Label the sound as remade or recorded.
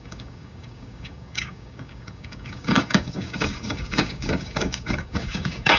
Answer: remade